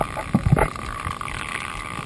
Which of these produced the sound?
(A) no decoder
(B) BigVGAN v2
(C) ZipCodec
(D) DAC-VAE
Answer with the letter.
A